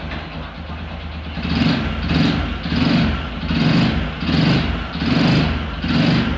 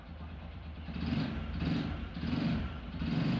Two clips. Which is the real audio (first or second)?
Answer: first